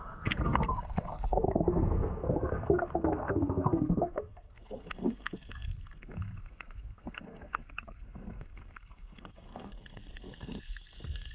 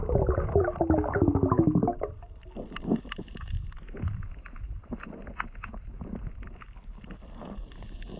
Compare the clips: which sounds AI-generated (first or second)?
first